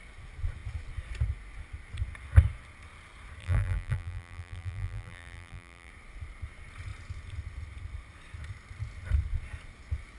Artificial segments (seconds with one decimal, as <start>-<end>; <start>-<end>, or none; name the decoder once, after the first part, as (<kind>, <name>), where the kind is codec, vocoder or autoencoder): 3.4-5.9 (vocoder, BigVGAN v2)